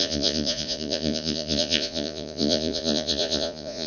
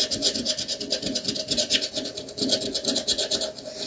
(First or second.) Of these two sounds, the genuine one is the second